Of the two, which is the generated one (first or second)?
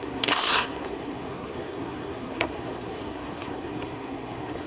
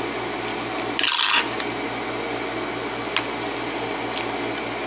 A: first